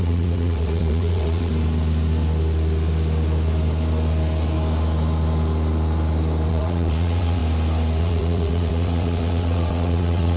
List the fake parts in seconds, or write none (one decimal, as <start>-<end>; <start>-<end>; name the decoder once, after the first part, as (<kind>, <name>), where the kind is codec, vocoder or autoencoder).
0.0-1.5 (vocoder, WaveNeXt); 6.5-7.4; 8.0-10.4